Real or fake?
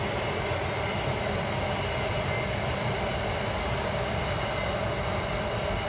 real